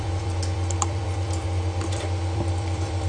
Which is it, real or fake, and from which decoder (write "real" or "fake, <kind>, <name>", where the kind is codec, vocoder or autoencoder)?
fake, vocoder, BigVGAN v2